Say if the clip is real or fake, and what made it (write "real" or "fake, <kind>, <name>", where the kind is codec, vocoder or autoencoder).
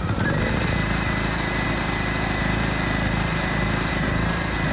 fake, vocoder, BigVGAN v2